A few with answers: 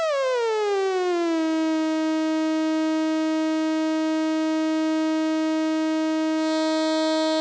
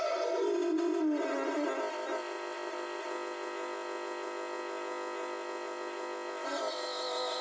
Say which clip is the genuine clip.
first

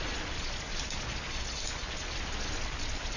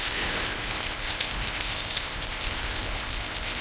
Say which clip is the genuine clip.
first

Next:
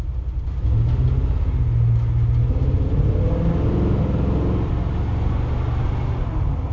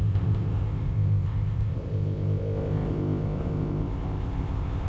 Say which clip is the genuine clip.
first